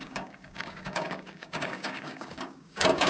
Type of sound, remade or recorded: remade